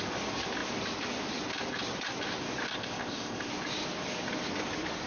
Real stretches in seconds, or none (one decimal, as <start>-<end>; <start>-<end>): 0.0-2.7; 3.5-5.1